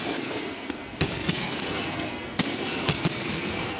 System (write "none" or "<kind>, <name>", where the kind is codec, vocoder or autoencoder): codec, SNAC